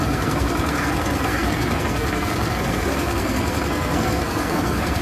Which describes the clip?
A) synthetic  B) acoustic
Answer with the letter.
A